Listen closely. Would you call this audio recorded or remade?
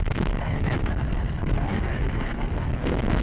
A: remade